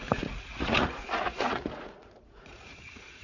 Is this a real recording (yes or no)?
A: no